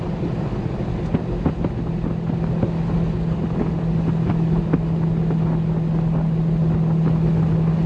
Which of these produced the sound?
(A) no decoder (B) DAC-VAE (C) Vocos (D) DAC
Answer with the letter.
A